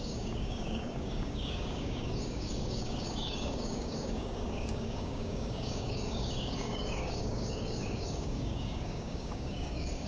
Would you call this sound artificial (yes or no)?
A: yes